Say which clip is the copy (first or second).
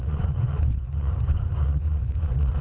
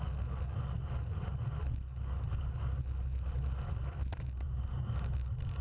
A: first